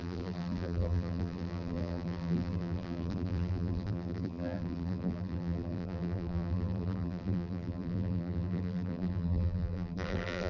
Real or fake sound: fake